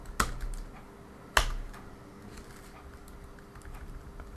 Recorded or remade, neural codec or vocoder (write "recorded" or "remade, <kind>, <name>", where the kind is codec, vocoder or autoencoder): recorded